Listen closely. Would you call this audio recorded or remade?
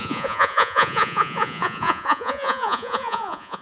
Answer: remade